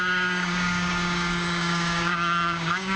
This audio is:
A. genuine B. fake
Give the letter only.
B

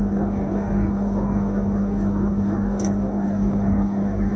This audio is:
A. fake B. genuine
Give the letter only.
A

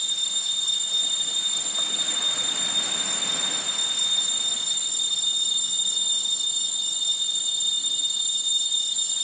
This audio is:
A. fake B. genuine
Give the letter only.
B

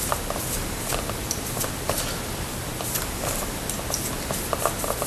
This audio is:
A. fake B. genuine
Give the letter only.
B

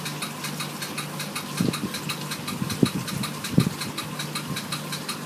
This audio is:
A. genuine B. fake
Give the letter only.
A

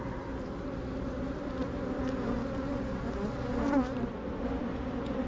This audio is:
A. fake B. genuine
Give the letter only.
B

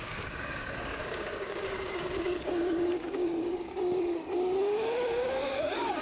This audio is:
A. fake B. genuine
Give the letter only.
A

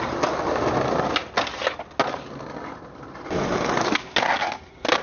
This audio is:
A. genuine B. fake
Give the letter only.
A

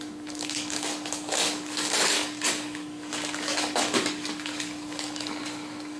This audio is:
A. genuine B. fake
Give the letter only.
B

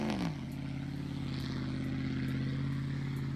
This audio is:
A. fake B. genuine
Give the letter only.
B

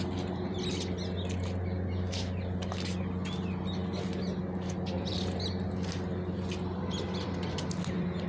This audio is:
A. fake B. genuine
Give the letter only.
B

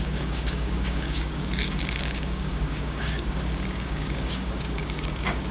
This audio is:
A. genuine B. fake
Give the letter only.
B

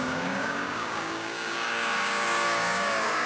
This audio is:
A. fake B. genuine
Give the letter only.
A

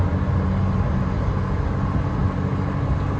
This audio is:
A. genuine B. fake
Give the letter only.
A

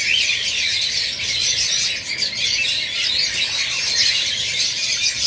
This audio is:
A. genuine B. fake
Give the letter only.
A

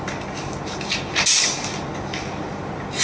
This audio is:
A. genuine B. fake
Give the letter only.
A